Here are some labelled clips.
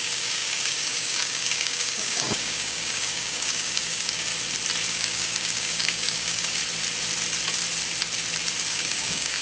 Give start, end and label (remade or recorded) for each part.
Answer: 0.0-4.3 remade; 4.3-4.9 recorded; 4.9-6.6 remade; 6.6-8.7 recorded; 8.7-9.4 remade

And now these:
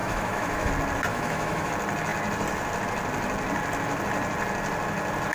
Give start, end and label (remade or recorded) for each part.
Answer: 0.0-0.7 remade; 0.7-1.1 recorded; 1.1-1.7 remade; 1.7-5.3 recorded

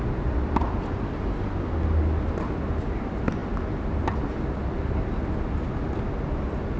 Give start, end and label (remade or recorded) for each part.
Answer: 0.0-6.8 recorded

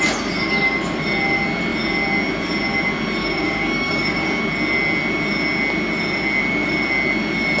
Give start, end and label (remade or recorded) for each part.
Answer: 0.0-3.2 recorded; 3.2-4.4 remade; 4.4-7.6 recorded

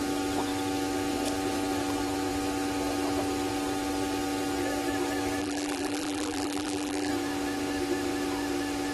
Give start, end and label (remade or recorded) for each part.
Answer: 0.0-5.4 recorded; 5.4-7.1 remade; 7.1-8.9 recorded

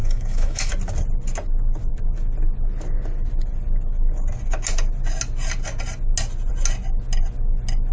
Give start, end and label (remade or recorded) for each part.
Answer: 0.0-0.7 remade; 0.7-7.9 recorded

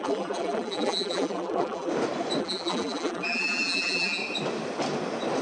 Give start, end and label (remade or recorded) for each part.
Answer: 0.0-1.9 remade; 1.9-2.4 recorded; 2.4-4.2 remade; 4.2-5.4 recorded